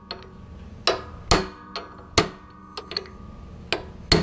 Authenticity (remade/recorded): recorded